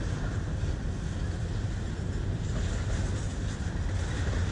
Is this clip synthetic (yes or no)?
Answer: no